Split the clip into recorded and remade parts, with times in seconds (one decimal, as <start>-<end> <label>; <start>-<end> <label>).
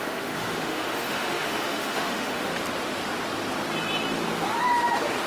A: 0.0-2.5 remade; 2.5-5.3 recorded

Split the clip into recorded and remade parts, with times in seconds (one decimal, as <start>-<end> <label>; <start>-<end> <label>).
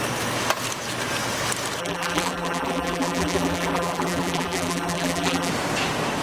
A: 0.0-1.8 recorded; 1.8-5.5 remade; 5.5-6.2 recorded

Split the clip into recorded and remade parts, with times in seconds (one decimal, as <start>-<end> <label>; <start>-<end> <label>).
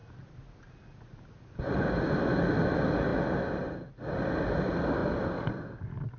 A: 0.0-6.2 recorded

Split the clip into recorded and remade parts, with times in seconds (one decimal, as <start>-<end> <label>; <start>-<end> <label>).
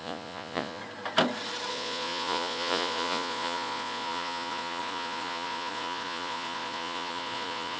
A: 0.0-0.8 remade; 0.8-1.7 recorded; 1.7-7.8 remade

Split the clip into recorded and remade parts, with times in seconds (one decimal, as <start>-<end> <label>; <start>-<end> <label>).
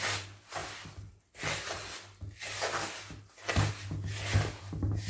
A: 0.0-5.1 recorded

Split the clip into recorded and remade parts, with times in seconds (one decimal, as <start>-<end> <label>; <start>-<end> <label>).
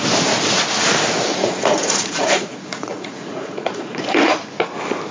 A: 0.0-1.3 recorded; 1.3-4.4 remade; 4.4-5.1 recorded